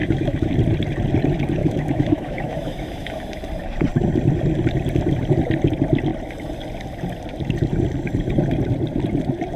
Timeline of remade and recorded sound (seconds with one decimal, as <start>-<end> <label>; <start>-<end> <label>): 0.0-0.5 remade; 0.5-1.6 recorded; 1.6-3.2 remade; 3.2-9.6 recorded